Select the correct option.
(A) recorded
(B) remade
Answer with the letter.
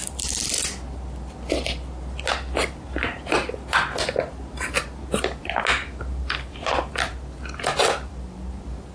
A